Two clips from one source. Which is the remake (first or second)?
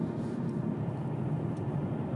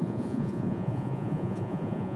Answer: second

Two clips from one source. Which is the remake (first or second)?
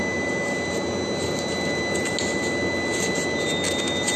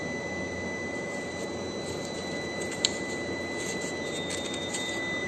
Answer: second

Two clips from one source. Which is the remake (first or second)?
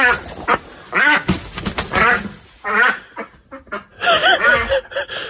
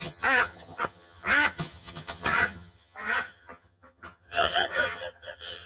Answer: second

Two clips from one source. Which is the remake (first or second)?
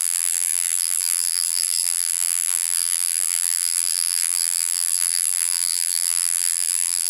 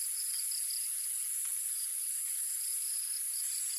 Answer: first